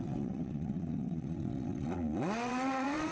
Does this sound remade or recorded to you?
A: remade